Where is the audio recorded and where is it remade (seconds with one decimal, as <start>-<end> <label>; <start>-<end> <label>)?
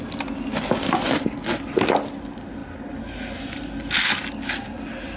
0.0-5.2 recorded